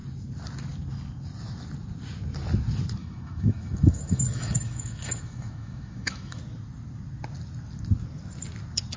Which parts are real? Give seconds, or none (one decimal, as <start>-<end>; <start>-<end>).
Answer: 0.0-3.0; 6.4-9.0